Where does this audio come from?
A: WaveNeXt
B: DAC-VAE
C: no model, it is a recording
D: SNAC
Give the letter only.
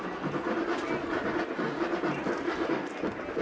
C